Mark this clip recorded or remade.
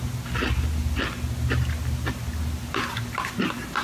recorded